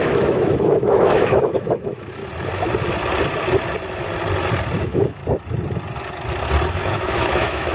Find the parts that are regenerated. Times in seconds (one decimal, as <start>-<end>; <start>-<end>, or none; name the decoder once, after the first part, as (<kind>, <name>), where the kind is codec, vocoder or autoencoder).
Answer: 0.0-2.2 (autoencoder, DAC-VAE); 4.8-5.2; 6.7-7.7